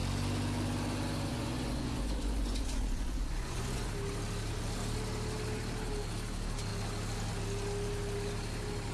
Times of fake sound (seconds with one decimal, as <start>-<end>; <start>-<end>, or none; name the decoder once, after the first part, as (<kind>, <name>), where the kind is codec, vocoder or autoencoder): 1.3-3.9 (vocoder, Vocos)